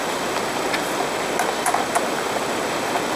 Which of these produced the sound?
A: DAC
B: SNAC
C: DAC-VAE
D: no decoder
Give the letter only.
D